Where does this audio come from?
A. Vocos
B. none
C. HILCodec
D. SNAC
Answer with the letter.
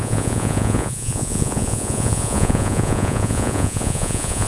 A